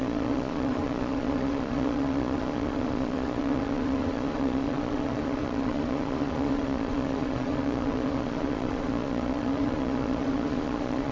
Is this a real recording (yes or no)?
no